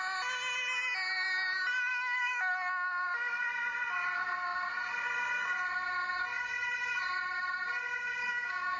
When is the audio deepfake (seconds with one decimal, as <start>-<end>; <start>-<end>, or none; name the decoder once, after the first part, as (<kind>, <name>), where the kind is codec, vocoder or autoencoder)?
1.9-2.5 (codec, DAC); 8.2-8.8